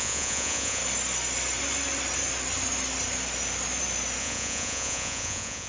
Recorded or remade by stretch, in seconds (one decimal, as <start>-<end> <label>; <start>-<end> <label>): 0.0-0.8 remade; 0.8-4.2 recorded; 4.2-5.7 remade